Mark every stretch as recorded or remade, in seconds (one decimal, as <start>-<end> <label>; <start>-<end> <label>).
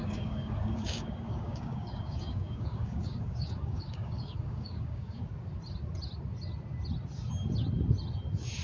0.0-5.2 remade; 5.2-8.6 recorded